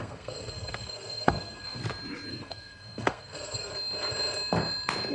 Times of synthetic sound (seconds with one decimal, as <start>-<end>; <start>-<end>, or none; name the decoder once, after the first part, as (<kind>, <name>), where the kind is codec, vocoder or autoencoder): 0.0-1.8 (codec, SNAC); 2.3-3.7